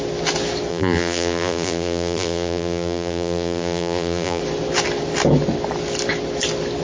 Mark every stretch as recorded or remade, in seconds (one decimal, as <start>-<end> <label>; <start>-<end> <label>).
0.0-0.7 recorded; 0.7-4.4 remade; 4.4-6.8 recorded